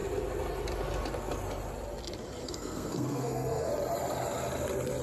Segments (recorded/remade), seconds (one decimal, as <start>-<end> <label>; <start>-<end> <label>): 0.0-2.4 recorded; 2.4-3.7 remade; 3.7-5.0 recorded